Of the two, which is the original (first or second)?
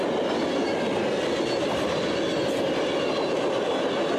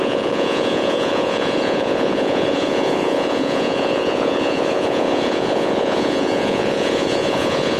first